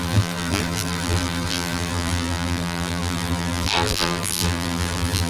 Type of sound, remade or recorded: remade